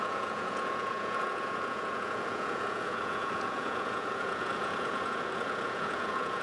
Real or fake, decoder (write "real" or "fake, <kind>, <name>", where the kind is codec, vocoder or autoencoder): fake, vocoder, Vocos